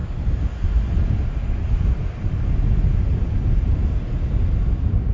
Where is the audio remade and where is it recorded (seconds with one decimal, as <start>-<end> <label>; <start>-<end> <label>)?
0.0-5.1 recorded